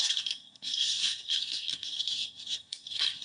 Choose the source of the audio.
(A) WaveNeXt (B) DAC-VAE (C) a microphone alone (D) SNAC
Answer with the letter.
D